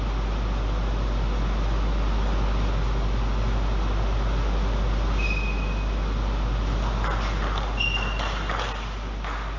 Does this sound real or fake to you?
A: real